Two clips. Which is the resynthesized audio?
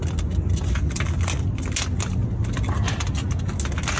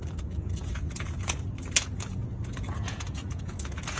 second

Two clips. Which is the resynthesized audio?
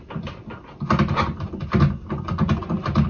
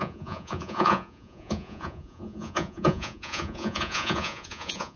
second